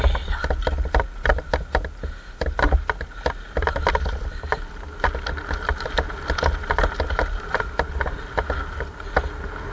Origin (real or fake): real